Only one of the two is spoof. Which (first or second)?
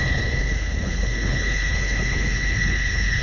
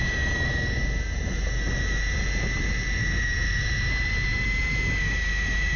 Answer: first